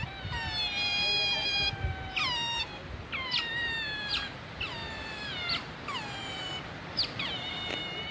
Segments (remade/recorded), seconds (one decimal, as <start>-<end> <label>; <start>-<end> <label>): 0.0-4.8 recorded; 4.8-7.3 remade; 7.3-8.1 recorded